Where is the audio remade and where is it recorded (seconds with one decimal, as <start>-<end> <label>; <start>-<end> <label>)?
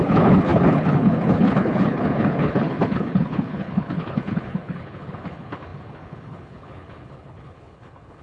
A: 0.0-8.2 remade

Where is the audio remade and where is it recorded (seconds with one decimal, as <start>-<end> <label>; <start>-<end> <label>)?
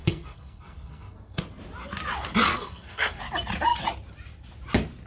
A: 0.0-1.4 remade; 1.4-2.5 recorded; 2.5-3.2 remade; 3.2-5.1 recorded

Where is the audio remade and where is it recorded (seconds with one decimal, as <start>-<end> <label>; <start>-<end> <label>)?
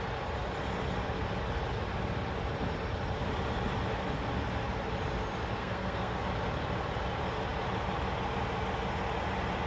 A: 0.0-5.6 recorded; 5.6-6.2 remade; 6.2-9.7 recorded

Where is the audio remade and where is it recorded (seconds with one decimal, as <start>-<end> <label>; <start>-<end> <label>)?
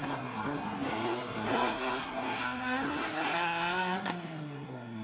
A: 0.0-5.0 remade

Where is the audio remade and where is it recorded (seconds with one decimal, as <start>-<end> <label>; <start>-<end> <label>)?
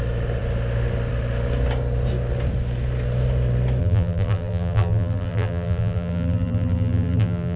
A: 0.0-3.8 recorded; 3.8-7.6 remade